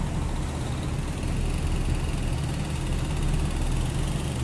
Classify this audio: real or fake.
real